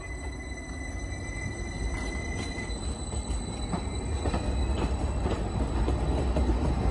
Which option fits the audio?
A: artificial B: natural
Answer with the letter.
B